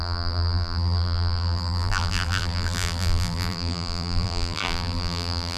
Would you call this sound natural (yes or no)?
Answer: no